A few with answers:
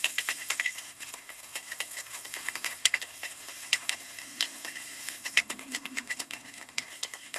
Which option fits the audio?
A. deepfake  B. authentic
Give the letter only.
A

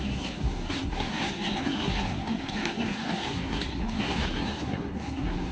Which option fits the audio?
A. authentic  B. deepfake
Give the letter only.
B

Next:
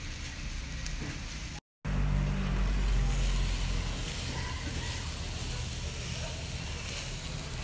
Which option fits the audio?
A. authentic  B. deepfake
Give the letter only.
A